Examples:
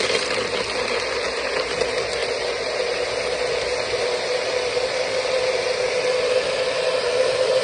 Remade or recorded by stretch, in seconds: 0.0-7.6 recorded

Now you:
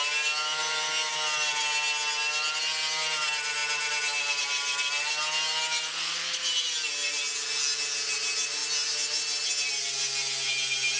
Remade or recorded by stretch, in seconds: 0.0-11.0 recorded